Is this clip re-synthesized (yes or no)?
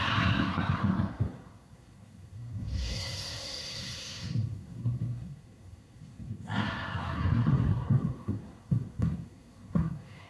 yes